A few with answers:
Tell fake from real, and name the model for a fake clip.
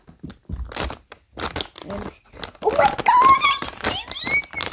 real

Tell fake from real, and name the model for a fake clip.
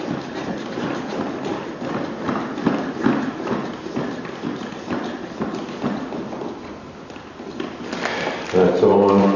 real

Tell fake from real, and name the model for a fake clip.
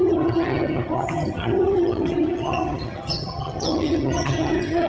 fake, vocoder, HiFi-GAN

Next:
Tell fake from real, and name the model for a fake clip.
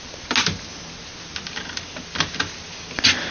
real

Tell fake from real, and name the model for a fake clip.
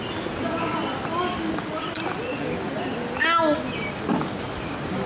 real